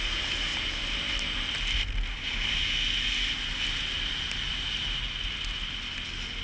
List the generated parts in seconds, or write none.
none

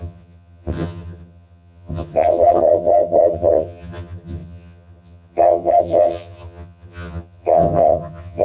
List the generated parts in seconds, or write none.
0.0-8.4 (vocoder, HiFi-GAN)

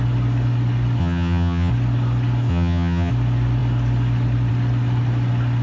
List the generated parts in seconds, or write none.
1.0-1.7 (vocoder, HiFi-GAN); 2.5-3.1

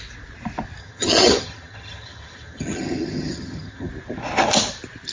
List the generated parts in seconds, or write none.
0.8-3.9 (vocoder, HiFi-GAN)

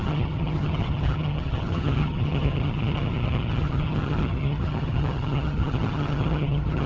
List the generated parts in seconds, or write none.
0.0-6.9 (vocoder, HiFi-GAN)

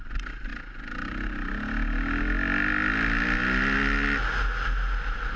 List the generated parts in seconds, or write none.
none

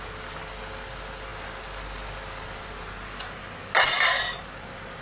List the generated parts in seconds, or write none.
none

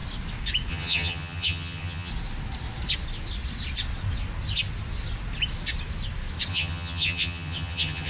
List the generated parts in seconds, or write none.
0.7-2.1 (vocoder, HiFi-GAN); 6.5-8.1